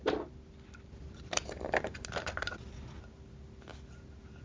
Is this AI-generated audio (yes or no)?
no